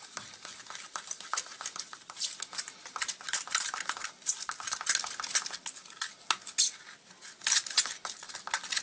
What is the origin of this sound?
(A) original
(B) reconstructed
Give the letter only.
A